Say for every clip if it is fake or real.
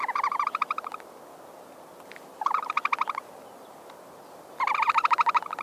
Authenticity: real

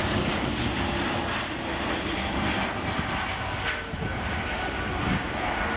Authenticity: real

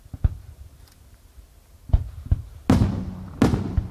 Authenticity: real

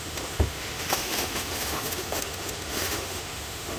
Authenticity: fake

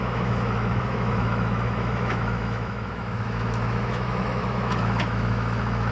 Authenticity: fake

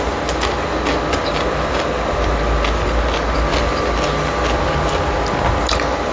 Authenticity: real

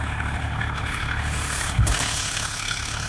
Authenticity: fake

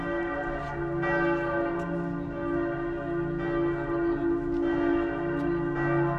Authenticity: real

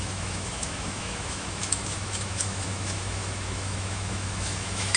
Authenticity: fake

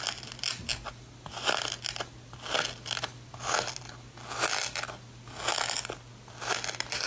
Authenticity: real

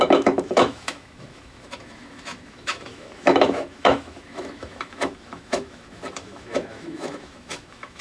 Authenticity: fake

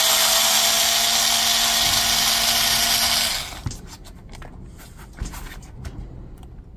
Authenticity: real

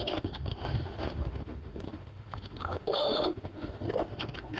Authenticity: fake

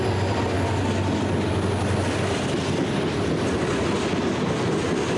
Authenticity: real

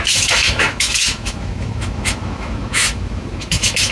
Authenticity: fake